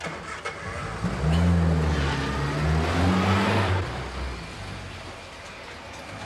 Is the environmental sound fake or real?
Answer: real